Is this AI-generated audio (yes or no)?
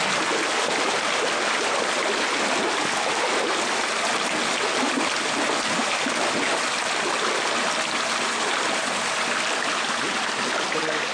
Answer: no